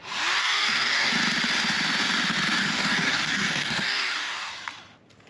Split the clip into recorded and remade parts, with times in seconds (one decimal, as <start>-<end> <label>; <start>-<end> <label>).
0.0-0.4 recorded; 0.4-1.1 remade; 1.1-2.6 recorded; 2.6-4.5 remade; 4.5-5.3 recorded